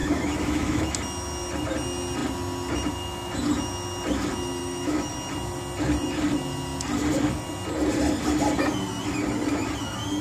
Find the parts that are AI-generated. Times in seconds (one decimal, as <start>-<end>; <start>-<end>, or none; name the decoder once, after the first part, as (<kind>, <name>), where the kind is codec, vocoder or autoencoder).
0.0-0.9 (autoencoder, DAC-VAE); 4.6-5.1